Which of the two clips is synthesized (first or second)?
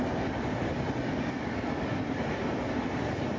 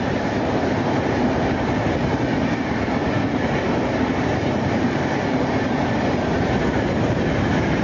second